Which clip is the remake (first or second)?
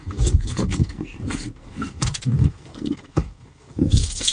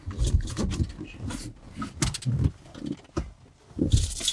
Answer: first